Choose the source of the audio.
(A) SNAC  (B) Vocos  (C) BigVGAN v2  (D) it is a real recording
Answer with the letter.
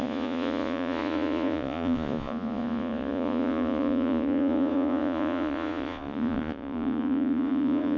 B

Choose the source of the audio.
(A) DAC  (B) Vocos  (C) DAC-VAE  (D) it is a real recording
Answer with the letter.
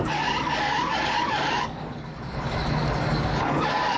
A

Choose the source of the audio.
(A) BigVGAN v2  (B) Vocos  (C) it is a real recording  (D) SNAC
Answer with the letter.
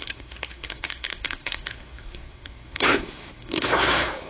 D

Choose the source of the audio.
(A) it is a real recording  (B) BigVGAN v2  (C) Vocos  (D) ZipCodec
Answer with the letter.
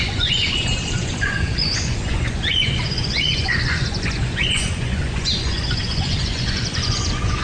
C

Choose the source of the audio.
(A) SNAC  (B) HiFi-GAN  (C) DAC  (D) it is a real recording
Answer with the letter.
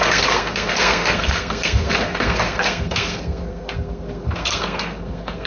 A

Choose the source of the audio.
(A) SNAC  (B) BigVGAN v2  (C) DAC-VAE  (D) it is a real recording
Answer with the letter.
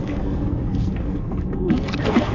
A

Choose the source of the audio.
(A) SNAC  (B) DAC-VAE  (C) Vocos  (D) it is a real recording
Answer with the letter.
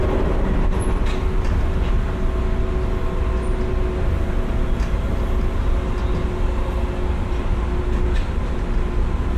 D